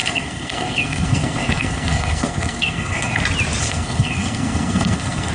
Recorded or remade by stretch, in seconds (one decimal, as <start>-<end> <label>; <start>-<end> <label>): 0.0-3.2 remade; 3.2-3.6 recorded; 3.6-5.3 remade